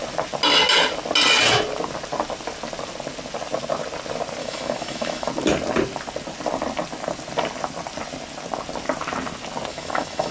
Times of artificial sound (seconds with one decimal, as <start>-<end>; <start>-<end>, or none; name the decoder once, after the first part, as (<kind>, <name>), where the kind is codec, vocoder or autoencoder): 4.4-5.3 (autoencoder, DAC-VAE); 9.7-10.3